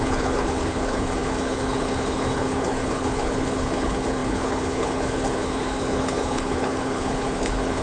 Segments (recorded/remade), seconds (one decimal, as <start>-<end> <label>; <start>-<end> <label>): 0.0-7.8 remade